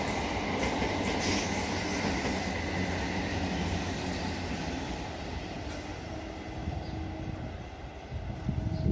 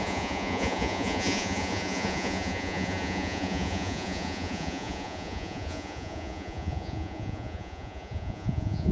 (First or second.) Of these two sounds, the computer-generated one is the second